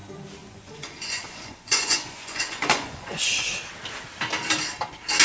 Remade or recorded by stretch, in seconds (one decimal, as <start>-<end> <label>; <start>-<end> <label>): 0.0-0.4 recorded; 0.4-3.5 remade; 3.5-5.2 recorded